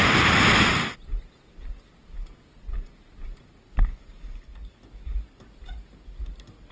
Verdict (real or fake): real